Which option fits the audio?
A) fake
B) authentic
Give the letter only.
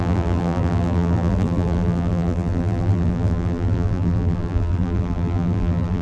A